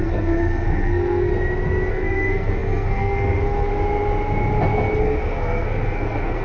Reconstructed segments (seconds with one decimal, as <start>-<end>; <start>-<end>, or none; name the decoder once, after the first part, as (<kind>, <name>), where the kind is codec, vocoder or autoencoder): 0.0-1.3 (codec, SNAC); 1.9-3.7; 5.0-6.4